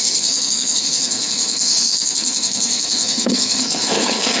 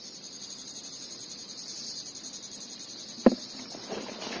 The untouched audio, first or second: second